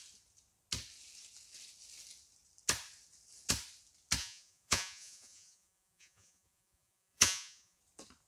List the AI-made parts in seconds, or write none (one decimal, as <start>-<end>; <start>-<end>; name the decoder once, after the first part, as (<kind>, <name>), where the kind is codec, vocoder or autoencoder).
4.2-7.8 (vocoder, Vocos)